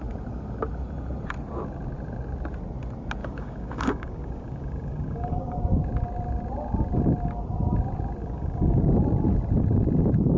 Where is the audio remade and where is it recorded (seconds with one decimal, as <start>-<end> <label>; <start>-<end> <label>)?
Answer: 0.0-3.2 recorded; 3.2-5.6 remade; 5.6-8.2 recorded; 8.2-8.8 remade; 8.8-10.4 recorded